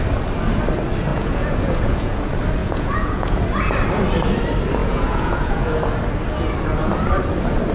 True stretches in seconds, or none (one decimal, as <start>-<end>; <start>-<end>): 0.0-1.1; 2.2-2.6; 3.4-4.8; 5.7-7.7